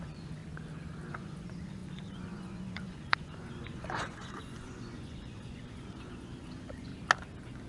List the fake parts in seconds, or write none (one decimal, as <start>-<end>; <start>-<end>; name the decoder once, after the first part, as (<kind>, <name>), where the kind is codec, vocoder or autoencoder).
0.0-0.4 (vocoder, Vocos); 1.1-6.9